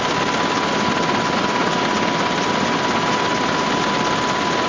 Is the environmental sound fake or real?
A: real